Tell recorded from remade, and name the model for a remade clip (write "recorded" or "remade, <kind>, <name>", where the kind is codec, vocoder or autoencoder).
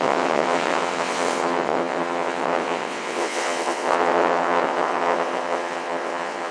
remade, vocoder, WaveNeXt